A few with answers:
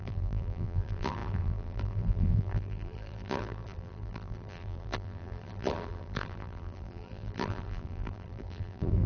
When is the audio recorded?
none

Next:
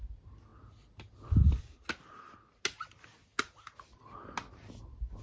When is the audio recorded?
0.0-5.2

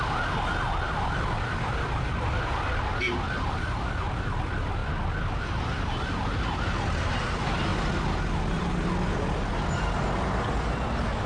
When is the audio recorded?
0.0-11.3

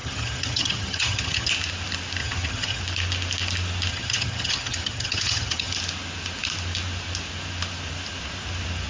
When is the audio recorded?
1.5-2.2; 2.8-3.9; 5.7-8.9

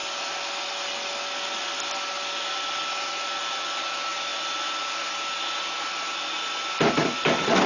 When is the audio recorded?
0.0-7.7